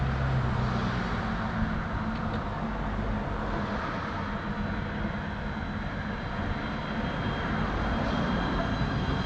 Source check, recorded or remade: recorded